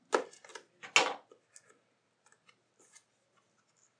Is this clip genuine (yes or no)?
yes